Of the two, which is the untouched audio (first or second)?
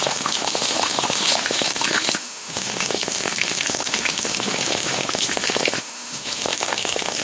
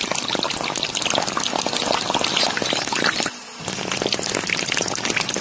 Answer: second